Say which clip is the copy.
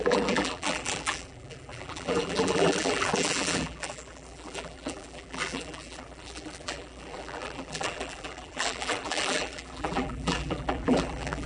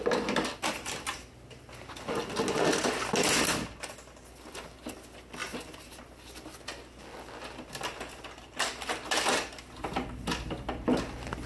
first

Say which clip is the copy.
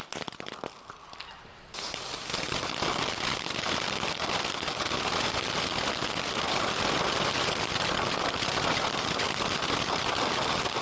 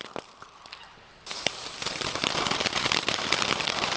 second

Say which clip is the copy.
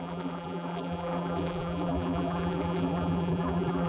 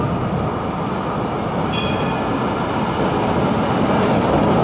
first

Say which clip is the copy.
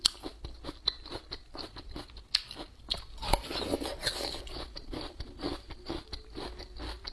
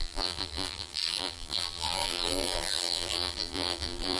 second